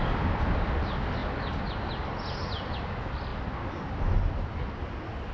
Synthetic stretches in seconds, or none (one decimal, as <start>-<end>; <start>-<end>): none